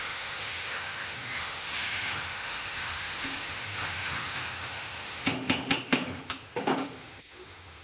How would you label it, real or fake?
fake